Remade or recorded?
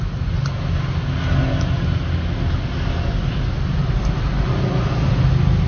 recorded